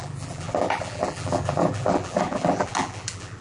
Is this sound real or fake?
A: fake